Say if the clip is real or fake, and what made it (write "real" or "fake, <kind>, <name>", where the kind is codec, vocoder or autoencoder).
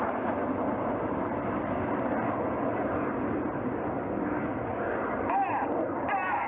real